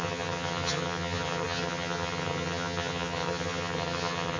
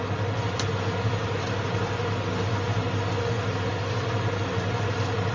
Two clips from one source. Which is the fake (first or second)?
first